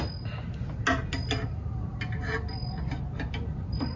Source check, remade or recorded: recorded